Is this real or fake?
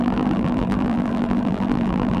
fake